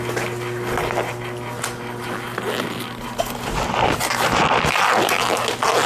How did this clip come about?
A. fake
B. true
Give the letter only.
B